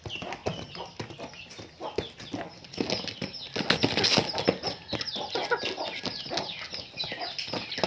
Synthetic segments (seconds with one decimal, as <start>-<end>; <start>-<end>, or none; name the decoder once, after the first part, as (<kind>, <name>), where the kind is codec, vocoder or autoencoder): none